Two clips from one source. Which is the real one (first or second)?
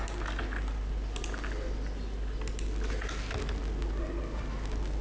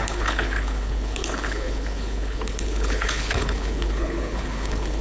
first